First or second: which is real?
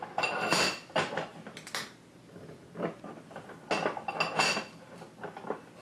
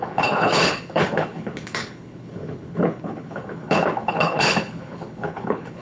first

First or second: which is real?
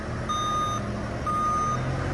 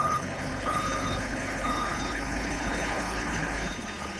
first